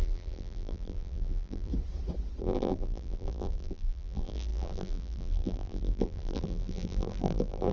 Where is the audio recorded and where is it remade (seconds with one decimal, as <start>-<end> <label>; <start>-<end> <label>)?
0.0-1.7 remade; 1.7-2.4 recorded; 2.4-7.7 remade